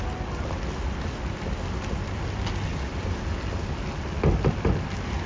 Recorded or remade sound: recorded